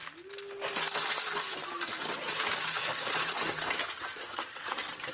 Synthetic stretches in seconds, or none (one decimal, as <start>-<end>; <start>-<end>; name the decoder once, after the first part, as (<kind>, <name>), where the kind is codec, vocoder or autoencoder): 1.6-5.1 (vocoder, BigVGAN v2)